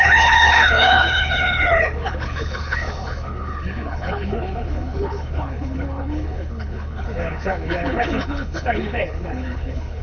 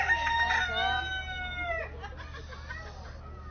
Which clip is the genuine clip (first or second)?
second